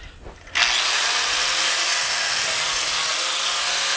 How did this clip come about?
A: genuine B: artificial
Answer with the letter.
A